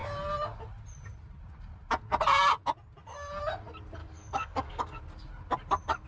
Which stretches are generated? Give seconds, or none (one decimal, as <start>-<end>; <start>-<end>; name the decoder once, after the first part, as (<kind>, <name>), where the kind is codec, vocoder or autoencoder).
4.0-5.0 (codec, DAC)